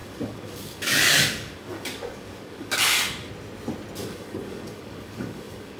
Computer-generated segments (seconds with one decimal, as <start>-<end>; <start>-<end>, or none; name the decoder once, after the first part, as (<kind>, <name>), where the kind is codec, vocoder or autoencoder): 0.0-3.3 (codec, DAC); 4.0-5.8